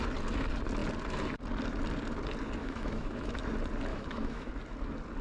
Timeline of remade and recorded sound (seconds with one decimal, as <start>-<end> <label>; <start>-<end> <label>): 0.0-2.6 recorded; 2.6-3.4 remade; 3.4-3.9 recorded; 3.9-4.5 remade; 4.5-5.2 recorded